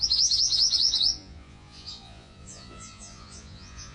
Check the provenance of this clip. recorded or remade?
remade